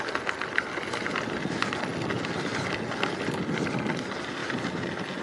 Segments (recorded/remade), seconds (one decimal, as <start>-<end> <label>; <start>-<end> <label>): 0.0-5.2 recorded